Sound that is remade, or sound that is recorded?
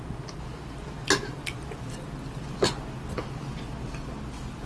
recorded